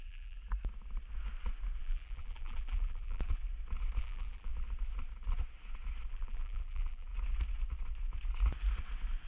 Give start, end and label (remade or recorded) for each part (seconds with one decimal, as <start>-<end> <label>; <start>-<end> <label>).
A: 0.0-0.4 remade; 0.4-1.8 recorded; 1.8-3.4 remade; 3.4-4.0 recorded; 4.0-4.5 remade; 4.5-6.1 recorded; 6.1-7.1 remade; 7.1-9.3 recorded